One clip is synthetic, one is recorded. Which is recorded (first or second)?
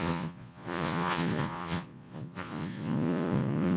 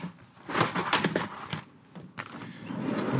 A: second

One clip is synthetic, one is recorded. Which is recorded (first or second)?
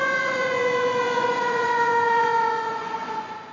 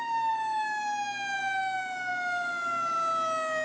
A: second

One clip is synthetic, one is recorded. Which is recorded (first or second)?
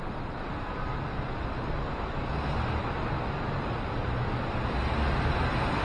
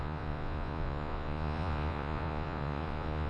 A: first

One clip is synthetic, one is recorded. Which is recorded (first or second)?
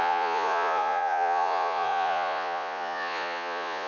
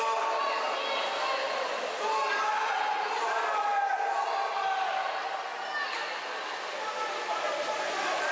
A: second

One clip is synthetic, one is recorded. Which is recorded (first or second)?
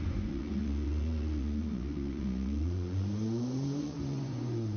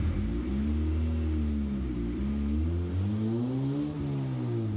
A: second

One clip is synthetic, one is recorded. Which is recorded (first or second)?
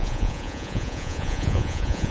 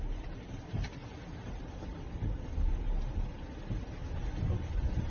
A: second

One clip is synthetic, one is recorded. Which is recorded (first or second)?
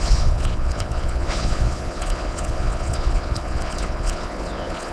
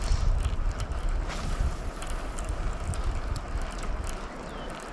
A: second